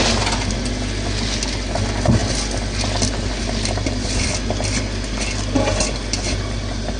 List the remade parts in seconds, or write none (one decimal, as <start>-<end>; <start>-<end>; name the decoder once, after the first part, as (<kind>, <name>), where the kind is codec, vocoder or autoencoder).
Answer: none